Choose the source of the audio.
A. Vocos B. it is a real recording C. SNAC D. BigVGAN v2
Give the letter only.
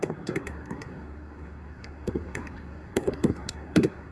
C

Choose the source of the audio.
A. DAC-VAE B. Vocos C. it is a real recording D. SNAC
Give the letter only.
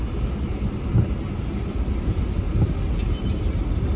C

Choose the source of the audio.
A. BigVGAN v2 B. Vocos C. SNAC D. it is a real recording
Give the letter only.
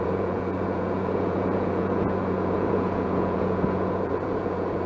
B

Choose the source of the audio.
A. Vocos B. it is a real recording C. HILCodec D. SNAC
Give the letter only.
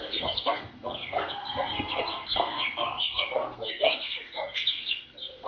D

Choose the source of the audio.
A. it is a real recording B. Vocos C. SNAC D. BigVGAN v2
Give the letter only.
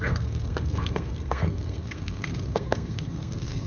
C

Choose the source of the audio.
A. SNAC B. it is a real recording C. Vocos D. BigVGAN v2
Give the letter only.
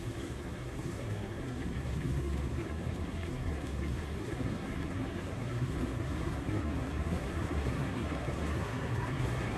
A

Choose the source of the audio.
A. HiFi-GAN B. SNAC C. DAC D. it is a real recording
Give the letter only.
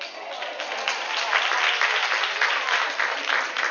D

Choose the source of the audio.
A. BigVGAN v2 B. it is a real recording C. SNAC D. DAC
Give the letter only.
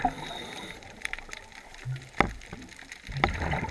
B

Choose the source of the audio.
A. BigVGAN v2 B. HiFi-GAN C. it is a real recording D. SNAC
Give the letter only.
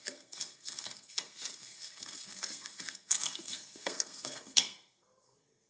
D